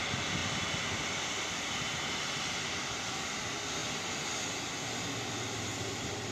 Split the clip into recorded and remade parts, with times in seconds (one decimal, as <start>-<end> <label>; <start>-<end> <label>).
0.0-0.4 recorded; 0.4-3.4 remade; 3.4-6.3 recorded